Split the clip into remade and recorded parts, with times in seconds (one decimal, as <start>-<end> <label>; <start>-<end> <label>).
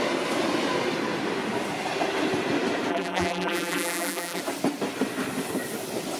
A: 0.0-2.9 recorded; 2.9-4.4 remade; 4.4-6.2 recorded